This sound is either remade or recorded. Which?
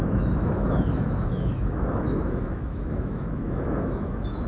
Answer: remade